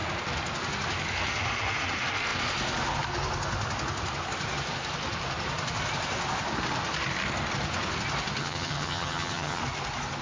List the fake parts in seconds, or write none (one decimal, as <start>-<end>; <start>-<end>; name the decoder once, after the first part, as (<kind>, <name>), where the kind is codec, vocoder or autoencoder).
8.4-9.6 (vocoder, HiFi-GAN)